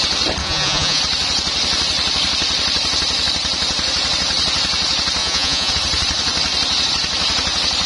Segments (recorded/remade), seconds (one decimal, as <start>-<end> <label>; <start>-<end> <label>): 0.0-0.4 recorded; 0.4-1.0 remade; 1.0-5.2 recorded; 5.2-5.7 remade; 5.7-7.9 recorded